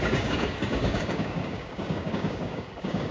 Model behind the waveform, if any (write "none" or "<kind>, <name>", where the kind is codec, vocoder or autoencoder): codec, DAC